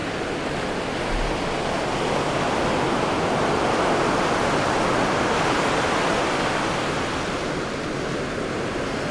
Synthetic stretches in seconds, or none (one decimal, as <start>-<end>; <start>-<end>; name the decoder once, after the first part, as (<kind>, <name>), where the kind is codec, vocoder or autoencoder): none